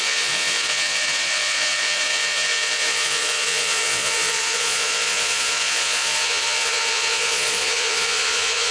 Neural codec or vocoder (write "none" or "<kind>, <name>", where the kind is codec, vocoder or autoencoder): vocoder, Vocos